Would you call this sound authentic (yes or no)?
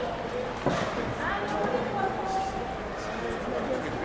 yes